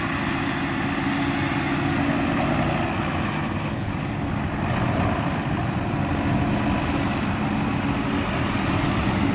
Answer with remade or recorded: recorded